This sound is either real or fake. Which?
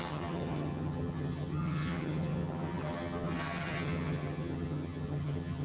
fake